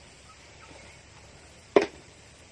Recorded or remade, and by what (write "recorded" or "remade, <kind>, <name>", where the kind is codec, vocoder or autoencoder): remade, vocoder, BigVGAN v2